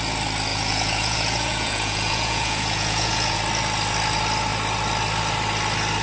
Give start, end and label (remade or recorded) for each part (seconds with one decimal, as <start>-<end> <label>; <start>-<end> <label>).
0.0-0.5 recorded; 0.5-3.4 remade; 3.4-6.0 recorded